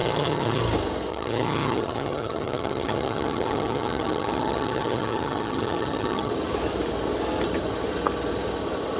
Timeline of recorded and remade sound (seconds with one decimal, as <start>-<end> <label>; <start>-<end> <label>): 0.0-0.6 remade; 0.6-1.1 recorded; 1.1-6.3 remade; 6.3-9.0 recorded